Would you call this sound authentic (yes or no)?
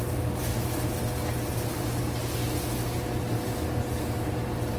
yes